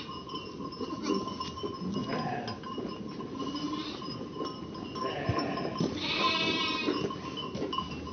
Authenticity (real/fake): real